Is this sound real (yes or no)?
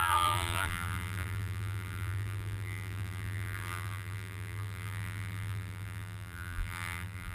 no